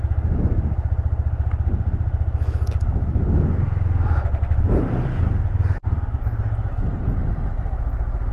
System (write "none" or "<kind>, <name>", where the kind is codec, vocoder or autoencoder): none